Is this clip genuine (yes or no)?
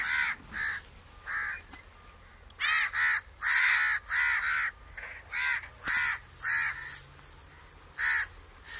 yes